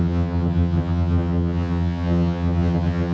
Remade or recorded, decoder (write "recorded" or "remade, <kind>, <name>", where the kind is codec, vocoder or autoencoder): remade, vocoder, HiFi-GAN